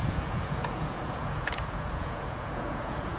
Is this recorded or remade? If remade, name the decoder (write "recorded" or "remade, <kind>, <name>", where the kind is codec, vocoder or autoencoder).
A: remade, vocoder, Vocos